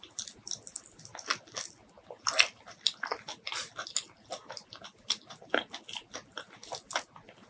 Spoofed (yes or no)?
no